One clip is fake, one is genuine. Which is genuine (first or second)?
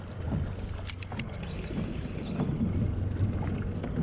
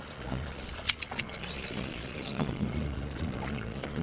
first